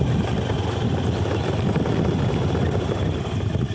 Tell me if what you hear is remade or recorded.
recorded